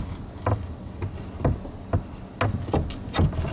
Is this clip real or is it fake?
real